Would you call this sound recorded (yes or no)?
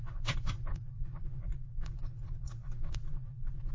no